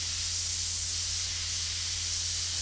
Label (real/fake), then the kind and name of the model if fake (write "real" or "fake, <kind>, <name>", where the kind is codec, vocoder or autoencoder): real